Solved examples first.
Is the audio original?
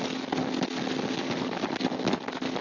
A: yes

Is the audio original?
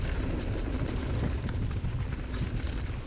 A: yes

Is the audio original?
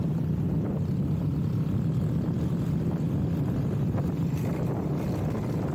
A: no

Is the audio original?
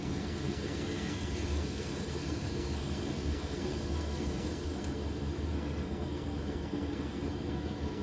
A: no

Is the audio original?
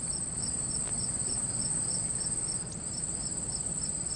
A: yes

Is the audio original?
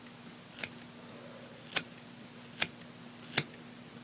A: yes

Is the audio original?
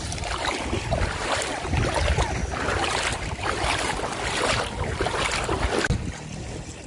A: yes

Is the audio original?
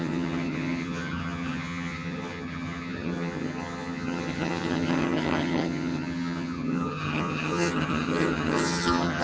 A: no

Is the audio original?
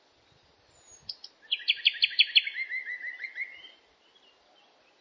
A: yes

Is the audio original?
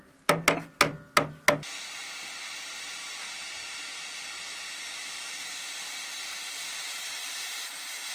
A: yes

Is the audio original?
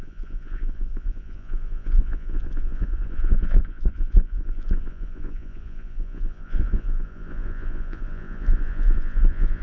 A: no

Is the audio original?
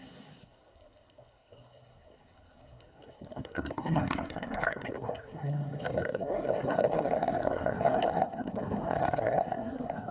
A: no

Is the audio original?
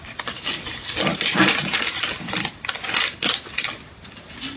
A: yes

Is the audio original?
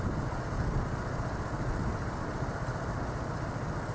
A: yes